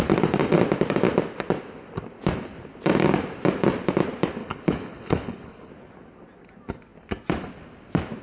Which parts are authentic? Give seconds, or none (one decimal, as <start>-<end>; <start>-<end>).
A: 0.0-4.4; 5.7-8.2